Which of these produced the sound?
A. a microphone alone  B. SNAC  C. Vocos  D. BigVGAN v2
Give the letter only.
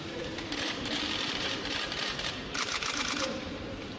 D